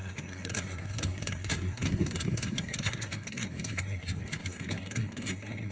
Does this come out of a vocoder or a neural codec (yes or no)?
yes